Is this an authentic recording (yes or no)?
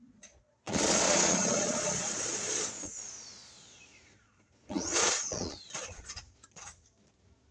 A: no